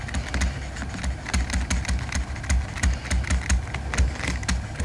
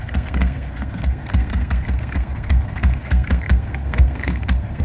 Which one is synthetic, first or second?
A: second